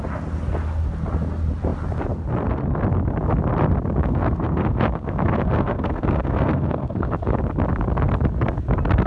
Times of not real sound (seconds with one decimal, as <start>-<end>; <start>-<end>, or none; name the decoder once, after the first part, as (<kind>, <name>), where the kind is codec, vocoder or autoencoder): 4.0-7.4 (codec, SNAC)